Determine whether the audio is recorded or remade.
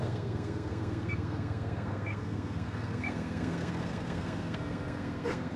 remade